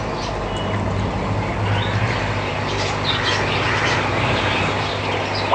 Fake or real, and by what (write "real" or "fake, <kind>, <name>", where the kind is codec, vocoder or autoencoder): real